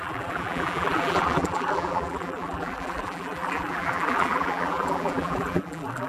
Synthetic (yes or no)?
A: yes